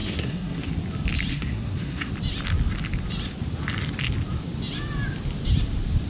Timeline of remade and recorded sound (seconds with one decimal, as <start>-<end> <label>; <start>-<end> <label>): 0.0-0.7 remade; 0.7-1.3 recorded; 1.3-2.1 remade; 2.1-6.1 recorded